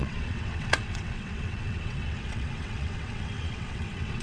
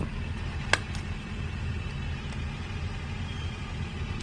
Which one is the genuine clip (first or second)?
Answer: second